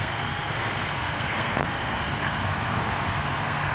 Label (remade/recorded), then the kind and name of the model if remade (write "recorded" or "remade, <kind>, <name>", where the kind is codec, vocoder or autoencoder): remade, codec, SNAC